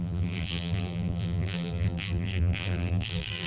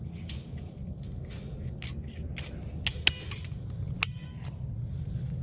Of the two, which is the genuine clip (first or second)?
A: second